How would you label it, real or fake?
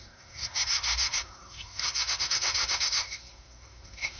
fake